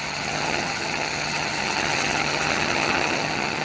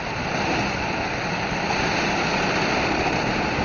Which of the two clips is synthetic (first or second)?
first